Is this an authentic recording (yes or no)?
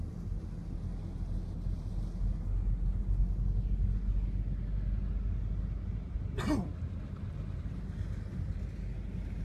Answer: yes